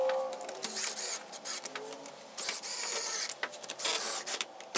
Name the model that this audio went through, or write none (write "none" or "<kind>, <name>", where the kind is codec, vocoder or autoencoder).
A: none